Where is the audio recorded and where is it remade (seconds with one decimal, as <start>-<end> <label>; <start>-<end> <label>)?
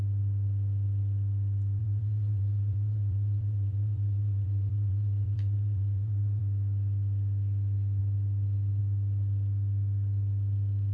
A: 0.0-1.8 recorded; 1.8-6.4 remade; 6.4-10.9 recorded